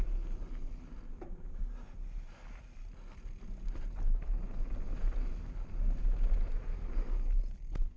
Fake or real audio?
real